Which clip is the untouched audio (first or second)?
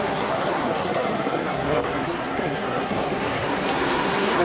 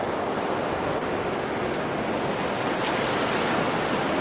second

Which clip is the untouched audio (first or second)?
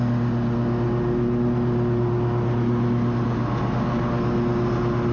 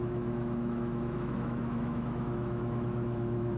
first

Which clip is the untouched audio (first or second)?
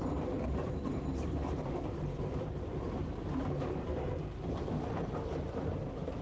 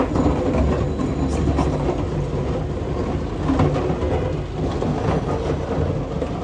second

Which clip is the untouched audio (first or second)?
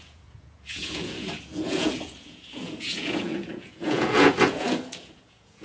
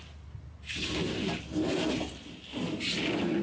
second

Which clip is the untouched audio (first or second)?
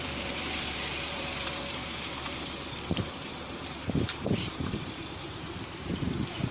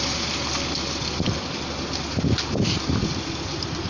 second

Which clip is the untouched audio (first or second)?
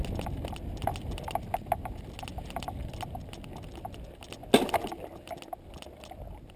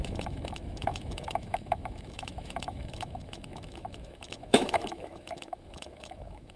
first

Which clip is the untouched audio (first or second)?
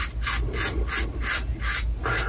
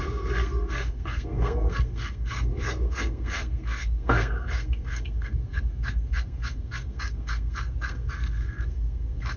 first